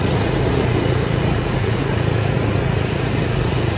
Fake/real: fake